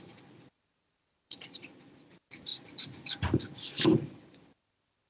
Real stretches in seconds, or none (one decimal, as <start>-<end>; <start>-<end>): none